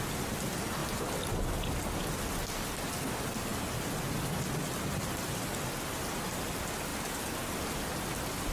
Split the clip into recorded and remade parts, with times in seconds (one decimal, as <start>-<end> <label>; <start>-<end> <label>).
0.0-8.5 recorded